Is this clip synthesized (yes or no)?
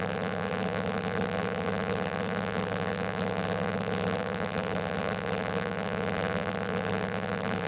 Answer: yes